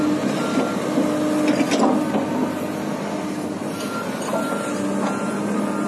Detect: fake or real real